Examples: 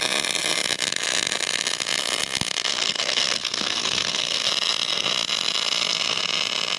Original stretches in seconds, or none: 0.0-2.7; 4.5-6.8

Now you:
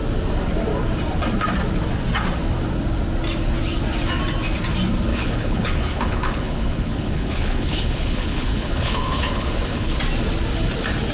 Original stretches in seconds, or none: 0.0-5.1; 10.0-11.1

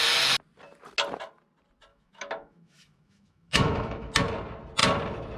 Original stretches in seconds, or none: 0.0-1.9; 4.1-5.4